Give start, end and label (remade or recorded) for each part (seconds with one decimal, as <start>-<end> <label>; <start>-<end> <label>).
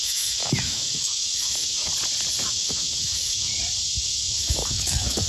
0.0-1.9 remade; 1.9-2.5 recorded; 2.5-3.5 remade; 3.5-4.0 recorded; 4.0-5.3 remade